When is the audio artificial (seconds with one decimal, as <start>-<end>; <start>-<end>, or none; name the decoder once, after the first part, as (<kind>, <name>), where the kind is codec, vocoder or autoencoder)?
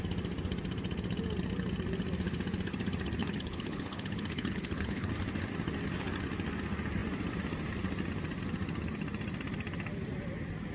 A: 3.2-5.1 (codec, HILCodec)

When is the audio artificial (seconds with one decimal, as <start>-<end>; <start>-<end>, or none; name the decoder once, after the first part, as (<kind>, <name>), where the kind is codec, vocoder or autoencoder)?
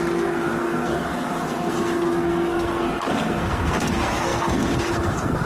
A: 0.0-5.5 (codec, SNAC)